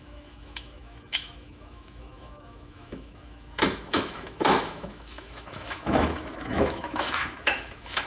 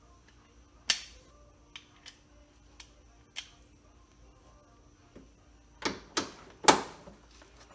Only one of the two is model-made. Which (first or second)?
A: first